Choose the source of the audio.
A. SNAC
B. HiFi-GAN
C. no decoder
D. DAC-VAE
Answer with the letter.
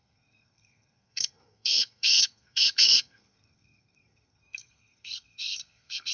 A